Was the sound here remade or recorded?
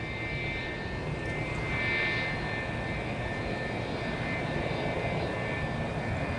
recorded